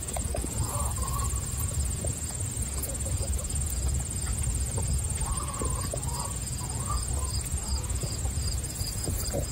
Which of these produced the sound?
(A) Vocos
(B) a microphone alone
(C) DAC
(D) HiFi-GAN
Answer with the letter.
A